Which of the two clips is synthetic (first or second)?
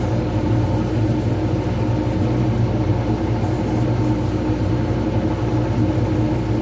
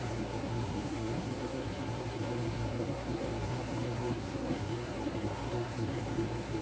second